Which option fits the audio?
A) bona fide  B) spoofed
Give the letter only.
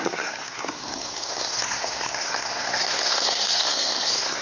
B